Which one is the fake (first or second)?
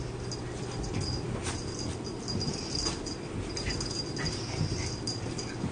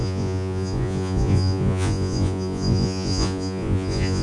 second